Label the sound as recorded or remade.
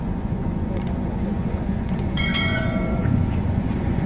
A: remade